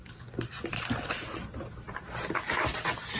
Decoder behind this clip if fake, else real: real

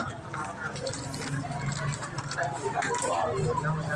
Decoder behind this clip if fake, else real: real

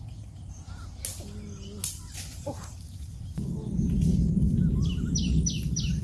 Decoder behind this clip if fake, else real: real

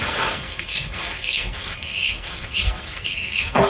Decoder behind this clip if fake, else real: fake, codec, SNAC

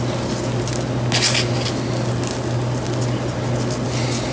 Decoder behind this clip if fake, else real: real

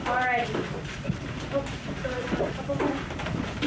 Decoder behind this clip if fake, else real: real